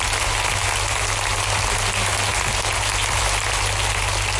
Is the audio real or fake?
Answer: real